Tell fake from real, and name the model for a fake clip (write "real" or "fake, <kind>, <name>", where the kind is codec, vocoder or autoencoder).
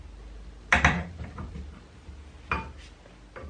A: real